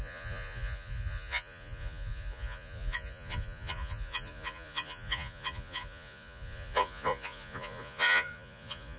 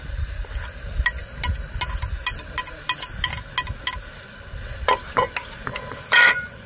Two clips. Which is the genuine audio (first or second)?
second